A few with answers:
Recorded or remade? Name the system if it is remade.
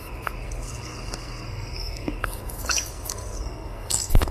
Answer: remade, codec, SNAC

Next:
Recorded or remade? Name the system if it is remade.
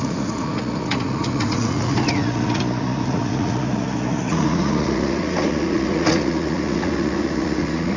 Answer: remade, vocoder, Vocos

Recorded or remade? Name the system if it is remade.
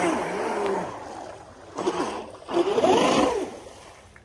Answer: recorded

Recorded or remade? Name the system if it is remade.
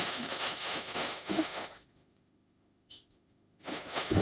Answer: remade, autoencoder, DAC-VAE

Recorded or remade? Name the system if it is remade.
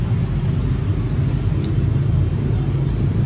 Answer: recorded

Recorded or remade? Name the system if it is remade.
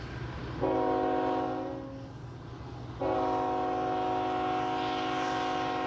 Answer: recorded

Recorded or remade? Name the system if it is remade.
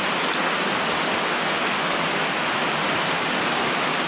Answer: recorded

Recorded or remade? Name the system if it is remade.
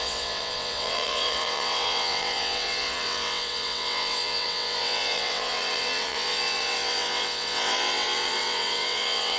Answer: remade, vocoder, WaveNeXt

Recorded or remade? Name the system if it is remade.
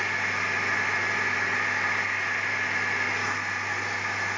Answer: recorded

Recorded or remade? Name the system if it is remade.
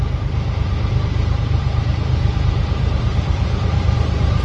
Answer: remade, vocoder, BigVGAN v2